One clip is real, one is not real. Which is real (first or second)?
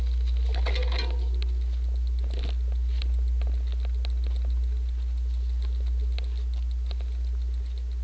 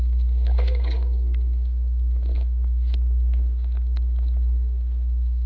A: first